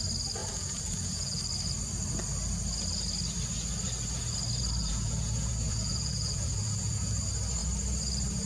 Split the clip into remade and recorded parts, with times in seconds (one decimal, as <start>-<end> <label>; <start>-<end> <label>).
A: 0.0-0.4 recorded; 0.4-1.4 remade; 1.4-4.8 recorded; 4.8-7.1 remade; 7.1-8.5 recorded